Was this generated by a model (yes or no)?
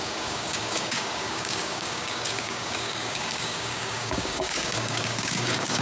yes